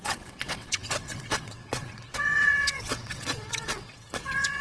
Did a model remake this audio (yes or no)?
yes